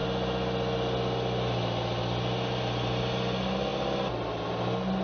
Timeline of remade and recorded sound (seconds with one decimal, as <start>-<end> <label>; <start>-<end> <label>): 0.0-5.0 recorded